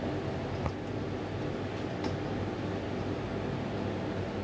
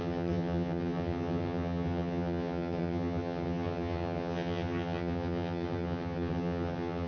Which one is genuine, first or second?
first